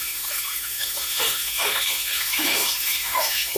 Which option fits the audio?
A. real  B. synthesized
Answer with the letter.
B